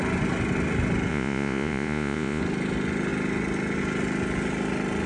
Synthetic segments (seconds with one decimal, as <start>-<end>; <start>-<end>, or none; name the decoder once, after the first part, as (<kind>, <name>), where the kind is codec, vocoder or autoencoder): 1.1-2.4 (vocoder, Vocos)